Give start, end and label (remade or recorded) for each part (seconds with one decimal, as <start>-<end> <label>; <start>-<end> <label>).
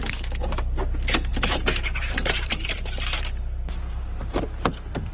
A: 0.0-1.3 recorded; 1.3-4.4 remade; 4.4-5.1 recorded